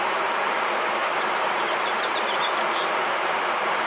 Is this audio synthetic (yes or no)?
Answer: no